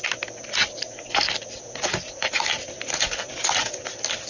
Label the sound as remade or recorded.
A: recorded